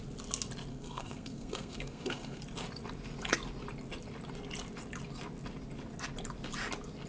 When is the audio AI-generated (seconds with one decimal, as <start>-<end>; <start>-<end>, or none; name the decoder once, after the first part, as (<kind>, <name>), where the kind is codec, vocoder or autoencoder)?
0.7-2.4 (codec, SNAC)